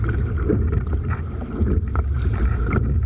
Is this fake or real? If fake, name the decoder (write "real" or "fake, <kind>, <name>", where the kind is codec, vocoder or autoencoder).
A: fake, vocoder, BigVGAN v2